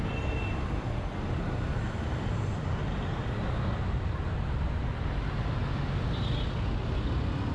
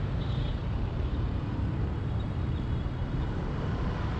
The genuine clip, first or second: first